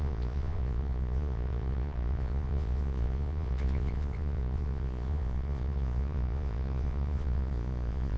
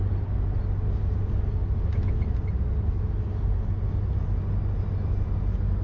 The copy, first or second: first